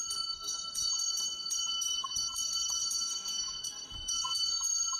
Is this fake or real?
fake